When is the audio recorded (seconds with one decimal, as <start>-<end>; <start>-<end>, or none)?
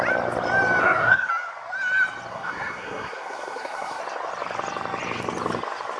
0.0-0.8; 1.3-2.3; 4.0-6.0